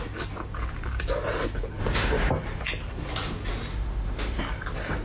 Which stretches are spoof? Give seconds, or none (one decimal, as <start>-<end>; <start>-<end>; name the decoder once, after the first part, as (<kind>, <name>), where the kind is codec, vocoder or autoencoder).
1.8-2.3 (autoencoder, DAC-VAE); 3.7-4.4